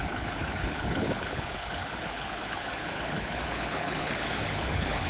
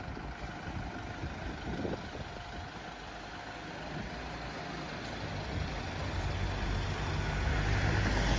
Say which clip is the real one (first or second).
second